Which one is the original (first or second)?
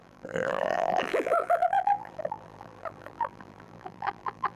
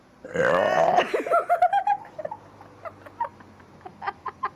second